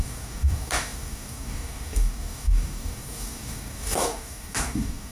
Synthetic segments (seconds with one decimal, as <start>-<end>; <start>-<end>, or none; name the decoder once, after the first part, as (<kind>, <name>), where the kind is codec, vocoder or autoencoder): 0.0-5.1 (codec, DAC)